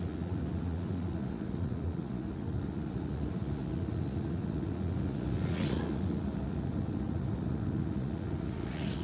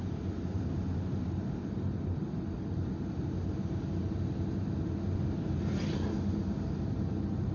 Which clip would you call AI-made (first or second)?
first